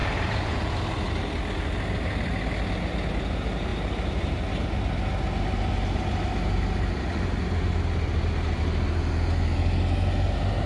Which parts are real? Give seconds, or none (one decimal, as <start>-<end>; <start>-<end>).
0.7-10.7